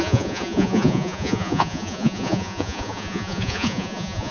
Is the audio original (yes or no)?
no